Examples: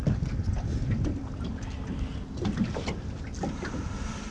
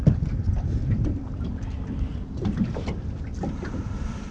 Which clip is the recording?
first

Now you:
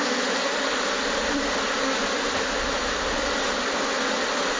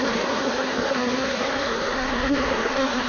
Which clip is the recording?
first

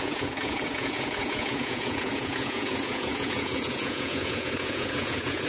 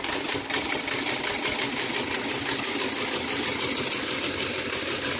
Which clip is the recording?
second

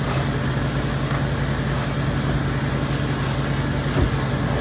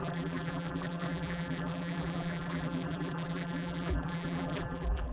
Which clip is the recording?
first